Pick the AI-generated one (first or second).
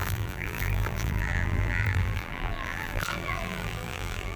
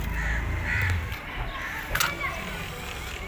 first